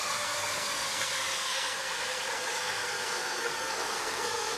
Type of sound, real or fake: fake